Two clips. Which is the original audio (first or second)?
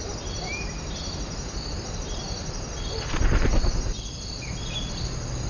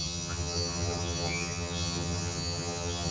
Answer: first